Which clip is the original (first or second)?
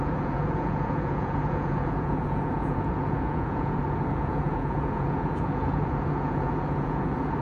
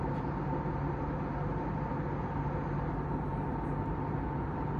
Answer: second